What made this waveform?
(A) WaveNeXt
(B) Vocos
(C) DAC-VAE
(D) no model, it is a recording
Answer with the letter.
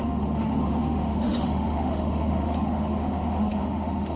C